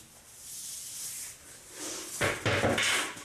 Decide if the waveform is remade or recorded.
recorded